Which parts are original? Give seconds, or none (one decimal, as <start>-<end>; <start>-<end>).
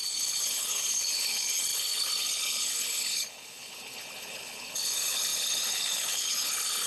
none